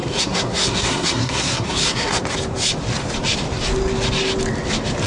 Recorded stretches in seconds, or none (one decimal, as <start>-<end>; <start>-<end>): 2.2-5.1